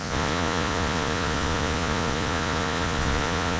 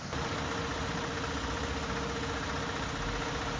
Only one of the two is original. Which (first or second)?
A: second